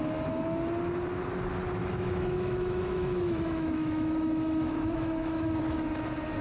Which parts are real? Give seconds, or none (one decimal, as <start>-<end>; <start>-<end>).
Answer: 0.0-1.8; 5.6-6.4